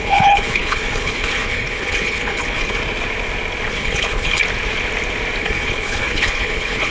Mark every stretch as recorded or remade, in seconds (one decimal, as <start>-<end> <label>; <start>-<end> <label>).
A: 0.0-2.8 remade; 2.8-3.7 recorded; 3.7-4.4 remade; 4.4-5.4 recorded; 5.4-6.9 remade